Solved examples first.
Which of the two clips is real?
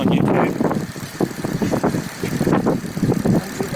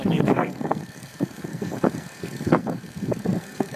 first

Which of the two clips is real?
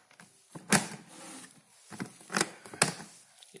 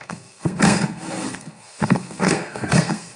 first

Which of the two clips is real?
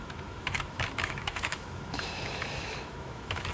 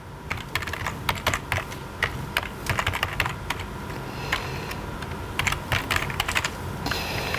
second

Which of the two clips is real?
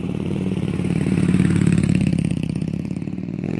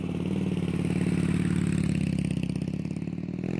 second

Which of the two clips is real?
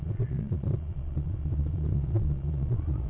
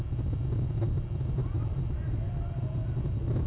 second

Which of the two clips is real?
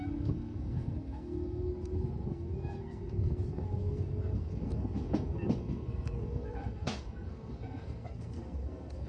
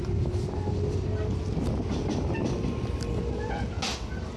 second